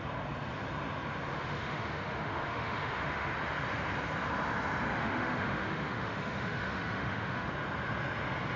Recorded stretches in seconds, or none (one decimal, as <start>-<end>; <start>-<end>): 0.0-1.3; 3.3-5.0; 7.5-8.6